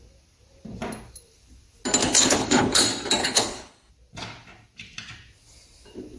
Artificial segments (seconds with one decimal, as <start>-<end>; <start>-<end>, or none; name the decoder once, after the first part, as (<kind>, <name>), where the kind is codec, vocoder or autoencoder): 2.0-2.8 (codec, HILCodec); 3.2-3.9